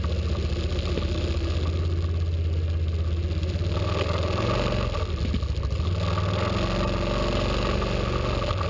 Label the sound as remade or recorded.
recorded